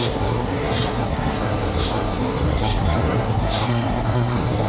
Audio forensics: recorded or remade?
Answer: remade